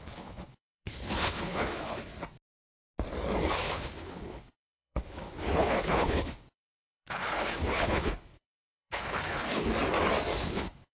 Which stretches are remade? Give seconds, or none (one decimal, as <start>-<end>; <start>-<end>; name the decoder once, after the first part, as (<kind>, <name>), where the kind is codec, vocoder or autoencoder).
0.0-2.1 (codec, HILCodec); 3.5-9.7; 10.4-10.9